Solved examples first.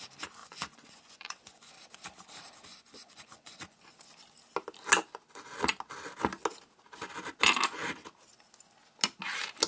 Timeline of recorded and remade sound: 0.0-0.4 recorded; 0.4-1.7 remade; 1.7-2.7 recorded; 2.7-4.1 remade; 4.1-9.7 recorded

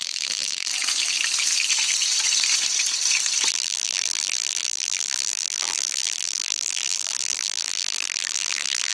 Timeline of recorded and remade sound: 0.0-0.7 remade; 0.7-3.5 recorded; 3.5-8.9 remade

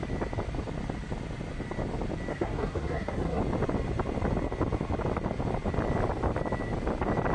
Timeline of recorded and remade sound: 0.0-2.3 recorded; 2.3-3.4 remade; 3.4-7.3 recorded

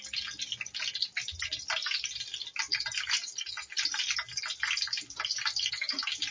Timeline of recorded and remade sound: 0.0-6.3 recorded

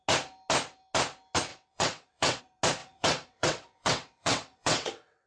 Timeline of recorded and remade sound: 0.0-1.5 recorded; 1.5-2.4 remade; 2.4-2.8 recorded; 2.8-5.3 remade

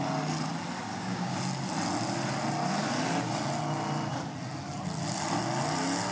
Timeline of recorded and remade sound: 0.0-0.9 recorded; 0.9-1.4 remade; 1.4-6.1 recorded

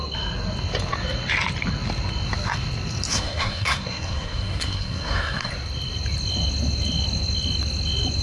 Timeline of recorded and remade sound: 0.0-3.1 recorded; 3.1-5.5 remade; 5.5-8.2 recorded

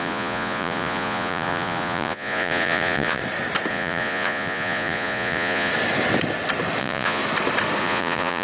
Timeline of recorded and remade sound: 0.0-3.2 remade; 3.2-3.7 recorded; 3.7-5.7 remade; 5.7-6.8 recorded; 6.8-7.2 remade; 7.2-7.8 recorded; 7.8-8.4 remade